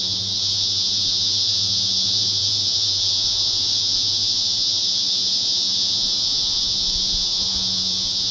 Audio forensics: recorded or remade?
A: remade